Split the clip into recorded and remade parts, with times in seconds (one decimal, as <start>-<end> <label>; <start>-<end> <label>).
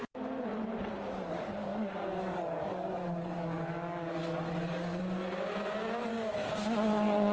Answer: 0.0-1.3 recorded; 1.3-5.0 remade; 5.0-6.1 recorded; 6.1-6.6 remade; 6.6-7.3 recorded